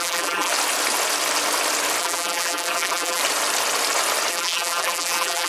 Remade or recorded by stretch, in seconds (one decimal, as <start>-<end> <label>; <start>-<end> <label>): 0.0-0.5 remade; 0.5-2.0 recorded; 2.0-3.2 remade; 3.2-4.3 recorded; 4.3-5.5 remade